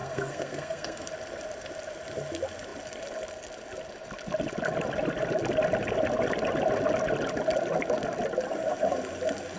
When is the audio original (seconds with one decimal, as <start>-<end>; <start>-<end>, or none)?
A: 1.1-9.6